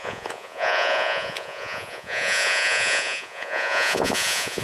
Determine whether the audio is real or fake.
fake